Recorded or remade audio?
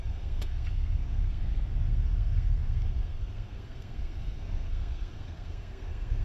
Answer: remade